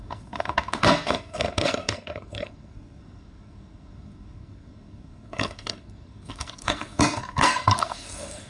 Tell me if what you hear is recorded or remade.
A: remade